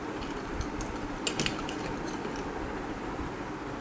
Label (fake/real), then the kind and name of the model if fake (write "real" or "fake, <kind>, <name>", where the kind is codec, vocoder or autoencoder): real